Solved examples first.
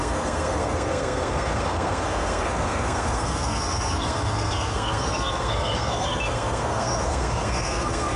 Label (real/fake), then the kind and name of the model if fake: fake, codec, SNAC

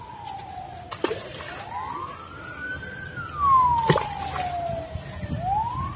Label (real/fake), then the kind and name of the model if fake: real